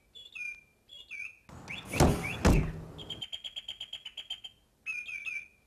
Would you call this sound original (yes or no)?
yes